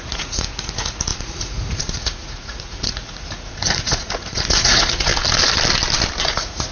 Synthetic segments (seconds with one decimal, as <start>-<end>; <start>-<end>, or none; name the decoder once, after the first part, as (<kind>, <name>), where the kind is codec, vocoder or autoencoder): 0.0-5.1 (vocoder, Vocos); 6.2-6.7